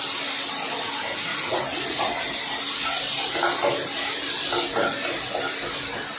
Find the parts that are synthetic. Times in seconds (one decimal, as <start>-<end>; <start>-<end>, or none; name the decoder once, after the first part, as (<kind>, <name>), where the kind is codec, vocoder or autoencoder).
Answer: 1.3-2.0 (vocoder, Vocos)